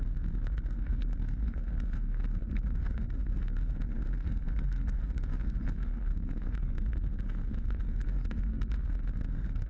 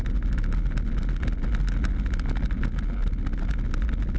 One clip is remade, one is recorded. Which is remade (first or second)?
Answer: first